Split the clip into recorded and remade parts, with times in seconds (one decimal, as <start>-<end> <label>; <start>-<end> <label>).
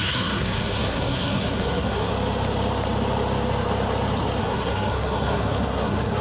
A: 0.0-2.1 remade; 2.1-4.4 recorded; 4.4-6.2 remade